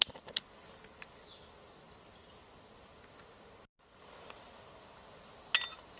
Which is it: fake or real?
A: real